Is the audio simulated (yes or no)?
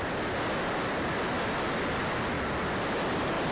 no